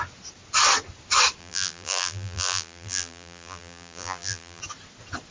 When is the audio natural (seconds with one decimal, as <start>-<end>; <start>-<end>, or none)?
0.0-1.4; 4.6-5.3